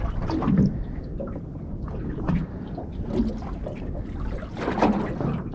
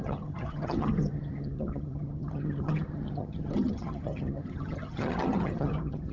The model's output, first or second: second